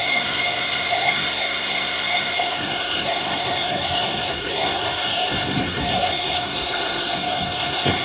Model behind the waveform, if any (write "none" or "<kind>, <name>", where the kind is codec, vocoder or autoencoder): codec, SNAC